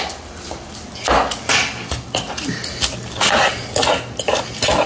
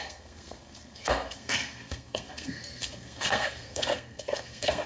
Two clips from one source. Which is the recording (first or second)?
first